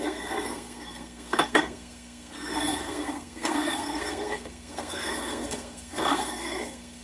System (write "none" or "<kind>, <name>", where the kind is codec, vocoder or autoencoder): codec, SNAC